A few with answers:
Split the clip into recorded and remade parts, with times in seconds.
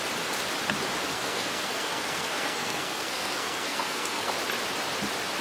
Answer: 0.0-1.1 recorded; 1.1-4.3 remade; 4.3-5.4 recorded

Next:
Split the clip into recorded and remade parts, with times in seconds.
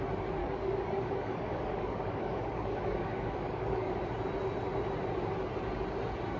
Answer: 0.0-0.4 recorded; 0.4-3.9 remade; 3.9-6.4 recorded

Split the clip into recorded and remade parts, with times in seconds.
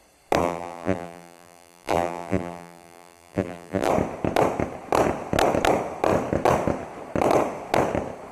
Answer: 0.0-0.4 recorded; 0.4-3.9 remade; 3.9-8.3 recorded